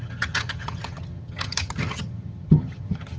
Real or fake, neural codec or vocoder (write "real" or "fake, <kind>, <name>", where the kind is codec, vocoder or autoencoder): fake, vocoder, HiFi-GAN